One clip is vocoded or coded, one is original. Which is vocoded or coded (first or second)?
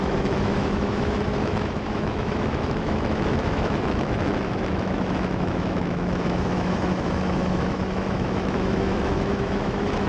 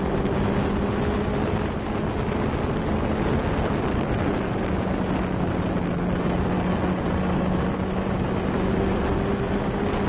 first